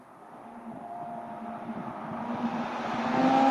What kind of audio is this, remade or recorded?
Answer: recorded